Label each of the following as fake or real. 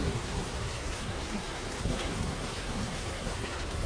fake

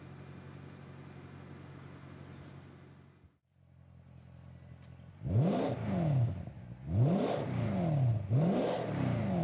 real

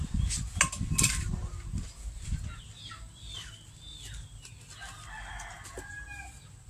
real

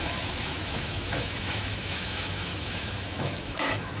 fake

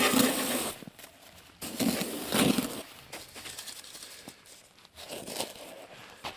real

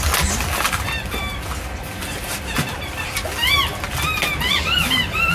real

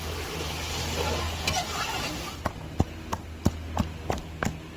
real